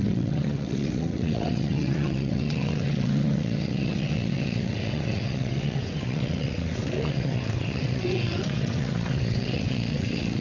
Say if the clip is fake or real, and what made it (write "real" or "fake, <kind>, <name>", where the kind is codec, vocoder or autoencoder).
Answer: fake, vocoder, WaveNeXt